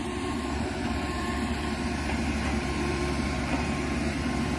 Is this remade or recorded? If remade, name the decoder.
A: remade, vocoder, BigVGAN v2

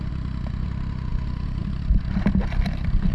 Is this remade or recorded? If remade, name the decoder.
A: recorded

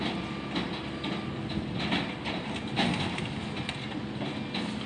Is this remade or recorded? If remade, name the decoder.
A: recorded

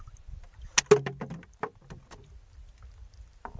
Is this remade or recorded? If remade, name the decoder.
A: recorded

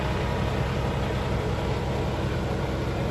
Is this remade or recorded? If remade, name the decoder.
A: recorded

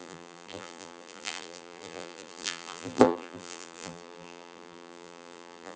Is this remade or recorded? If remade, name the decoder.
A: remade, vocoder, BigVGAN v2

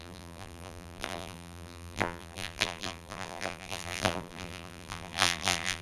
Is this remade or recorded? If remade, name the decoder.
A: remade, vocoder, BigVGAN v2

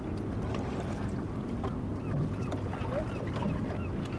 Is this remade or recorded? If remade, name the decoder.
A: recorded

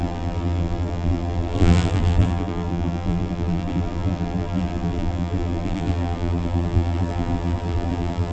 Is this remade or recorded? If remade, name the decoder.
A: remade, vocoder, BigVGAN v2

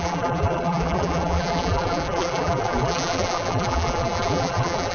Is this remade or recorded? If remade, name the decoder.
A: remade, vocoder, BigVGAN v2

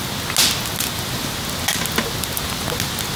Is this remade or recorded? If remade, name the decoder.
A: recorded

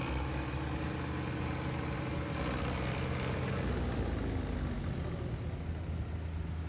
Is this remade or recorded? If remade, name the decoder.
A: recorded